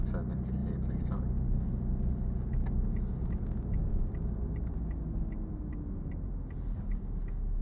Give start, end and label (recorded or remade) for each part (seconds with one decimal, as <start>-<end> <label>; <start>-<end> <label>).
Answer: 0.0-0.6 recorded; 0.6-1.4 remade; 1.4-3.9 recorded; 3.9-4.7 remade; 4.7-7.6 recorded